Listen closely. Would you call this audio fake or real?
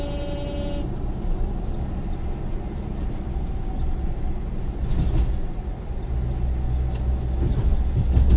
real